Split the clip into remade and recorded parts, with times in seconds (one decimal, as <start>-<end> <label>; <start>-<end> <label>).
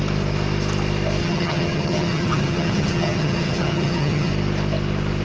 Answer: 0.0-1.2 recorded; 1.2-4.3 remade; 4.3-5.2 recorded